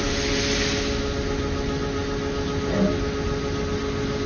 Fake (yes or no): no